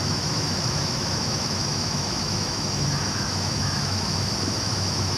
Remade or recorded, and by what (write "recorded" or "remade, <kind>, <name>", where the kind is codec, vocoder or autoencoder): remade, autoencoder, DAC-VAE